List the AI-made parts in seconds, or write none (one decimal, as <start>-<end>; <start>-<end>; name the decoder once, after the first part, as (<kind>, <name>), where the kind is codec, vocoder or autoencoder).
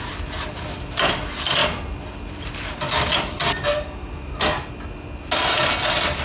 none